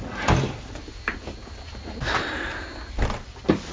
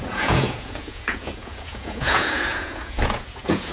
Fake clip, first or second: second